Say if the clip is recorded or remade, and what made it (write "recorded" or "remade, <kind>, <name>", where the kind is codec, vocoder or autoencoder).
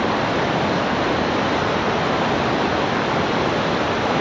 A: recorded